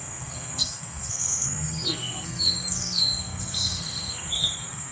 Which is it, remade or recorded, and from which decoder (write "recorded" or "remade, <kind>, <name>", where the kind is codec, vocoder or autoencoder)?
remade, codec, SNAC